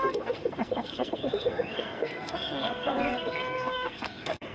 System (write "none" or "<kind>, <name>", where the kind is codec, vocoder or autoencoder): codec, SNAC